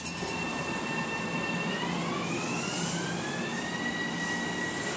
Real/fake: real